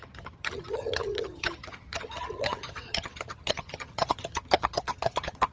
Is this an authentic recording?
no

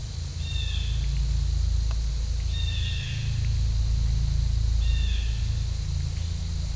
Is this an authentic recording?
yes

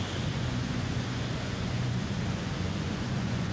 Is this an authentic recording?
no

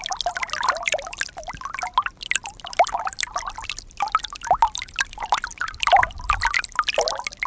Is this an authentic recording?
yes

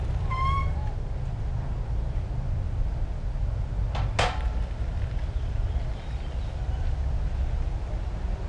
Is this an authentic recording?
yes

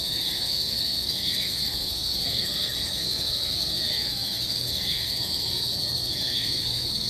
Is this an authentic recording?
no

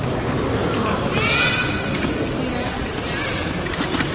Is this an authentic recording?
yes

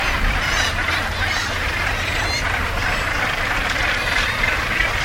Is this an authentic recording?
no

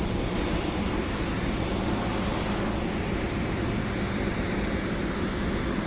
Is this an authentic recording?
yes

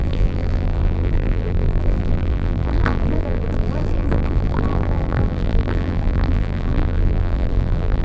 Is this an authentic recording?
no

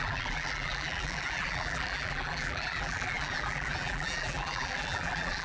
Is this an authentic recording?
no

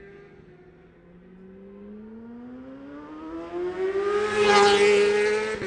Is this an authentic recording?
yes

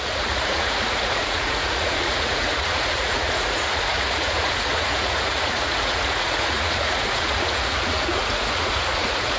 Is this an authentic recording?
no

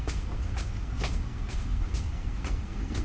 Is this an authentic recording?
no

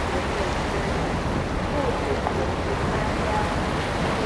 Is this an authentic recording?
yes